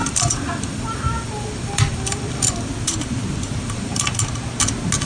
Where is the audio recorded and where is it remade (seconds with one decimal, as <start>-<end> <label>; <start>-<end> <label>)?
0.0-2.7 remade; 2.7-3.6 recorded; 3.6-4.1 remade; 4.1-5.1 recorded